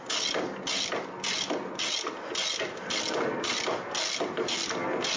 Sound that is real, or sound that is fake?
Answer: real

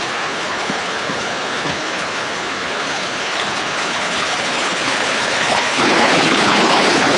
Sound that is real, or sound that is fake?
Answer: fake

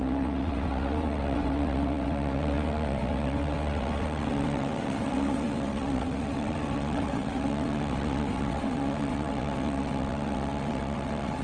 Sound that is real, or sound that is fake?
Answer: fake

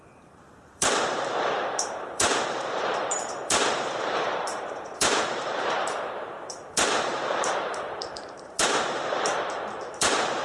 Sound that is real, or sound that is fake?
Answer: fake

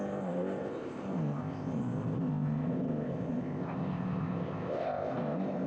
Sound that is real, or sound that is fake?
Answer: fake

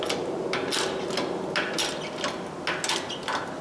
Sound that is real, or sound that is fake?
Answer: real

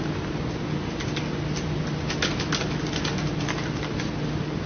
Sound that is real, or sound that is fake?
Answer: real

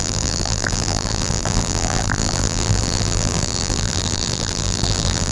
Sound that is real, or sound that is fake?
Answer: fake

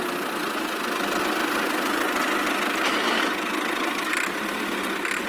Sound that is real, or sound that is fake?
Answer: real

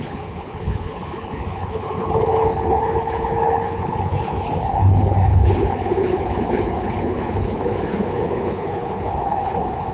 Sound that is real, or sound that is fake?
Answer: fake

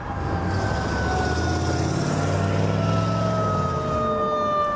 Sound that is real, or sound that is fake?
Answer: real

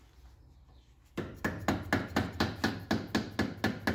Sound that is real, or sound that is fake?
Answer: real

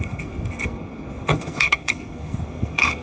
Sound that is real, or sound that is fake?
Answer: fake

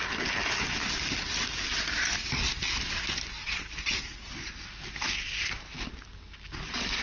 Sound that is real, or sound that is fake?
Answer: real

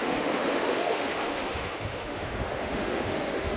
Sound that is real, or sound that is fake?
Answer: fake